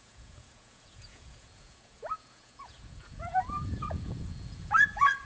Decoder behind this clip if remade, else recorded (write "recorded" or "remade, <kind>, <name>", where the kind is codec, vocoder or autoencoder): remade, vocoder, Vocos